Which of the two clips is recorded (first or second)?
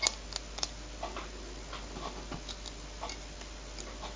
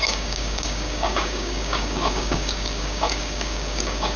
first